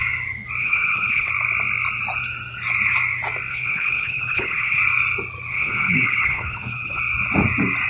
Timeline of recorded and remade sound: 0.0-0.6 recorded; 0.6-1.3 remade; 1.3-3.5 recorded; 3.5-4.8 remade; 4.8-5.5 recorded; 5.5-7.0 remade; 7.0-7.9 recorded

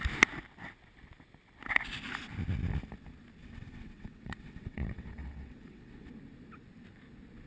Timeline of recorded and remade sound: 0.0-3.4 recorded; 3.4-6.1 remade; 6.1-7.5 recorded

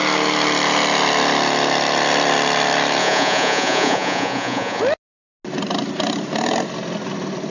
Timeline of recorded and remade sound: 0.0-3.0 recorded; 3.0-4.8 remade; 4.8-7.5 recorded

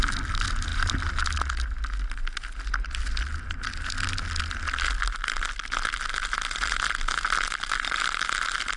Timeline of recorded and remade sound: 0.0-8.8 recorded

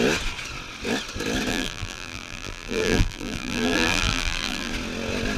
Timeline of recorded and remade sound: 0.0-1.5 recorded; 1.5-4.7 remade; 4.7-5.4 recorded

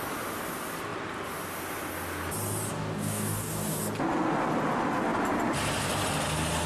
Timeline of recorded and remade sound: 0.0-2.7 recorded; 2.7-3.8 remade; 3.8-6.7 recorded

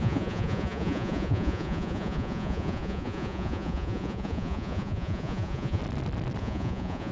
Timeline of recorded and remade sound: 0.0-5.8 remade; 5.8-6.4 recorded; 6.4-7.1 remade

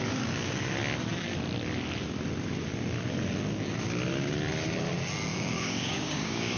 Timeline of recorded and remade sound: 0.0-5.3 recorded; 5.3-6.6 remade